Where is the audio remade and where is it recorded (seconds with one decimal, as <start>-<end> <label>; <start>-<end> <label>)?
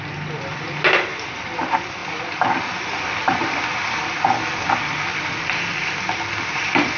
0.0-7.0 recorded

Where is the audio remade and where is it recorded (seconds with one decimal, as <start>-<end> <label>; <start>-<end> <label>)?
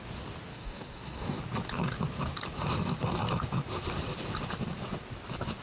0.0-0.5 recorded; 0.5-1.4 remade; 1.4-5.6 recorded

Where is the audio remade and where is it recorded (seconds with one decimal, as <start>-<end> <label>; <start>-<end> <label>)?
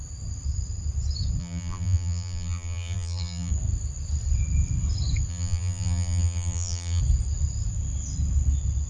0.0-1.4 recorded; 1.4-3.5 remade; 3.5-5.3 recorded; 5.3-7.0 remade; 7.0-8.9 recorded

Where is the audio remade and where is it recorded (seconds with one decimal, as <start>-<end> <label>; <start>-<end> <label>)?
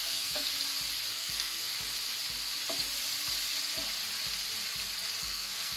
0.0-0.5 remade; 0.5-1.1 recorded; 1.1-1.7 remade; 1.7-5.2 recorded; 5.2-5.8 remade